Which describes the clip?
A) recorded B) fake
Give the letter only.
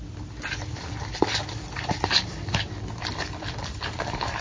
B